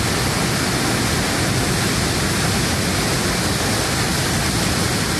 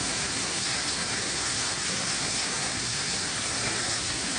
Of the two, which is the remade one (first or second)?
second